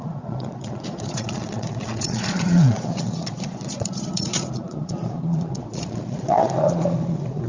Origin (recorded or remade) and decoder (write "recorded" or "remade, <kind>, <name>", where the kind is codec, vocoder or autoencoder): remade, vocoder, Vocos